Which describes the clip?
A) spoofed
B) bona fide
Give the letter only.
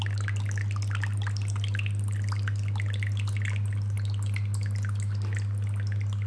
B